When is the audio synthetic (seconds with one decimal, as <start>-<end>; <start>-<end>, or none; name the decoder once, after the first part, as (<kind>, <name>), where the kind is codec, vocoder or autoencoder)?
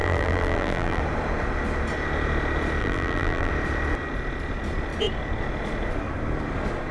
0.0-1.0 (vocoder, BigVGAN v2); 2.8-3.5